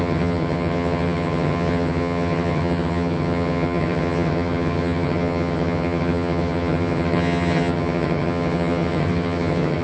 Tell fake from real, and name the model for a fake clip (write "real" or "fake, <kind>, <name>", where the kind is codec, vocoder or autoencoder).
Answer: fake, vocoder, HiFi-GAN